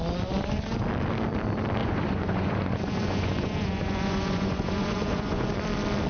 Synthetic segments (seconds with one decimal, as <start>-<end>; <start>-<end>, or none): 1.8-5.5